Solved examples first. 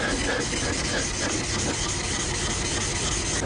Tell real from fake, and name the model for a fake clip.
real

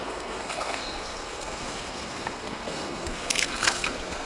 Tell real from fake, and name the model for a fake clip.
fake, codec, SNAC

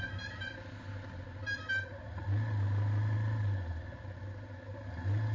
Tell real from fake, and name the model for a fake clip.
real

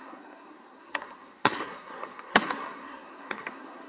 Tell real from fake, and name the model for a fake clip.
fake, codec, SNAC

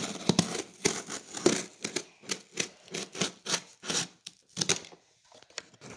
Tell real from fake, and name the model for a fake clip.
real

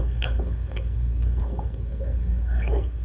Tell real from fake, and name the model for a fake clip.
fake, codec, SNAC